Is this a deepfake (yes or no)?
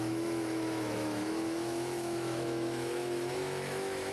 yes